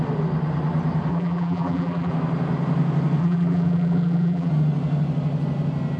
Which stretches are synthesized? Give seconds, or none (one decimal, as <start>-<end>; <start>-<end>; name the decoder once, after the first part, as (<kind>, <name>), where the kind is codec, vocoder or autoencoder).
1.1-2.1 (vocoder, BigVGAN v2); 3.2-4.5